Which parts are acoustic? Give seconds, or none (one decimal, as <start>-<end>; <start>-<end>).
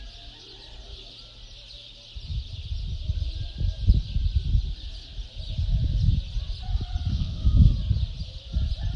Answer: 0.0-7.1; 7.7-9.0